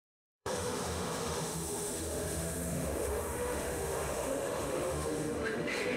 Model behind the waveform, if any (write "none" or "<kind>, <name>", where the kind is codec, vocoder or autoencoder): autoencoder, DAC-VAE